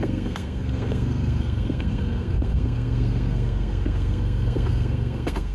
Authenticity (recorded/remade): remade